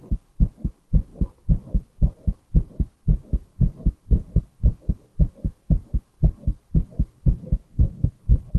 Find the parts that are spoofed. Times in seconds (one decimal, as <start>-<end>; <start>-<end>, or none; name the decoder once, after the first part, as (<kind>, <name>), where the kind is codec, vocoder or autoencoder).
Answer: 7.4-8.2 (codec, SNAC)